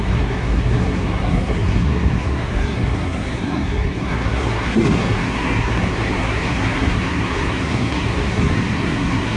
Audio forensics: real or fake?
fake